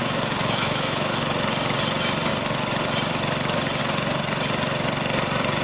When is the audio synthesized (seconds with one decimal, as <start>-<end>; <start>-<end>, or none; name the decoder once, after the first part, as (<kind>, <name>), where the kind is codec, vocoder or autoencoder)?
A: 0.0-1.1 (autoencoder, DAC-VAE)